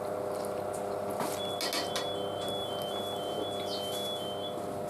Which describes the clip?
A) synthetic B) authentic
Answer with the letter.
B